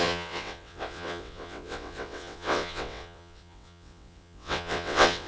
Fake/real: fake